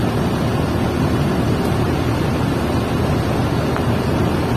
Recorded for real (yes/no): yes